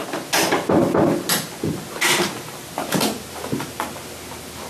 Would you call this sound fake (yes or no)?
no